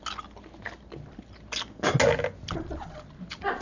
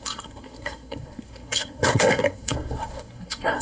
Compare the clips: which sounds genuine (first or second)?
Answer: first